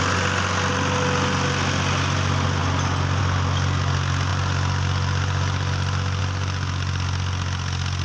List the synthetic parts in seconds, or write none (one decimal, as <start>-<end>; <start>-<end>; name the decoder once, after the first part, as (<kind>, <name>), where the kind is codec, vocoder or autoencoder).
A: none